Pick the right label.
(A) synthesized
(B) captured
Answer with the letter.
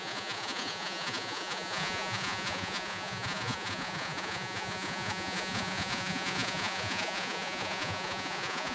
A